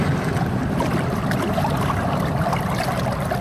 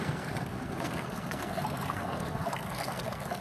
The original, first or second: first